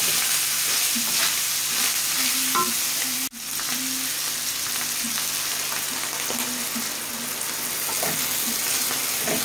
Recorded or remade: recorded